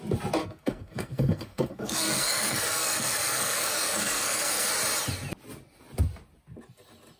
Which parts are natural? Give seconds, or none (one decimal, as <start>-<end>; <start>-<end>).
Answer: 0.0-0.4; 4.7-7.2